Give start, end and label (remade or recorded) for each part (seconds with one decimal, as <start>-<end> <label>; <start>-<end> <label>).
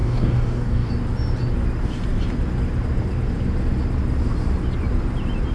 0.0-0.9 remade; 0.9-5.5 recorded